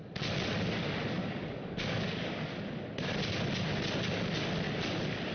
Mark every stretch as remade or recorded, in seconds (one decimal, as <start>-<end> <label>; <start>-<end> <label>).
0.0-1.2 recorded; 1.2-2.4 remade; 2.4-5.3 recorded